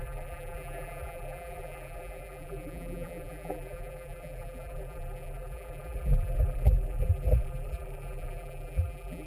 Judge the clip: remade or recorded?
remade